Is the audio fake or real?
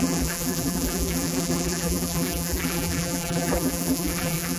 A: fake